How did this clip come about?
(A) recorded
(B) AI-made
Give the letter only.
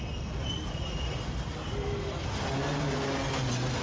A